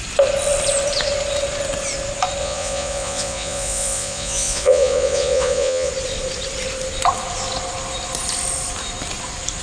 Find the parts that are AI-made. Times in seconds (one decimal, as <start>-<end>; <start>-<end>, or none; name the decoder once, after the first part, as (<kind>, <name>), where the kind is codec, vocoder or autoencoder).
2.4-5.9 (vocoder, Vocos)